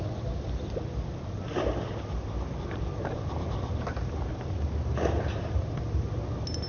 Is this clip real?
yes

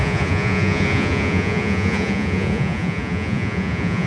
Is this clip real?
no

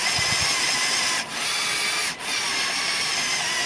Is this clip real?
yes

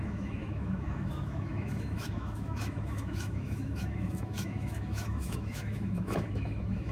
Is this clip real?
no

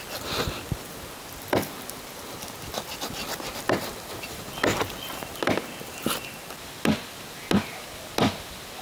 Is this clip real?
yes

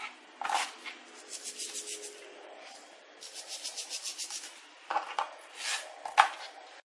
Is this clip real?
yes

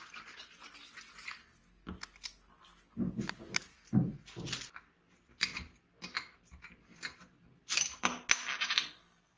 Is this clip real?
yes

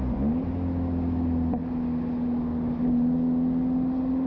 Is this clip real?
yes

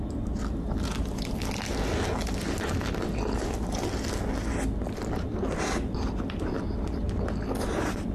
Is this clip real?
yes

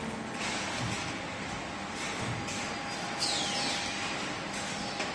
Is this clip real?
yes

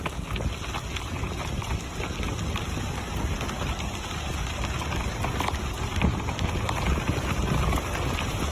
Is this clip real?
yes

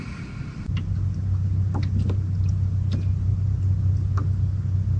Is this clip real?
yes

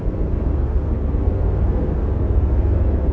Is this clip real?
no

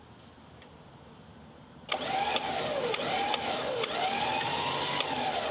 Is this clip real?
yes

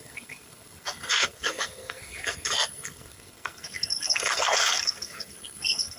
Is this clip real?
no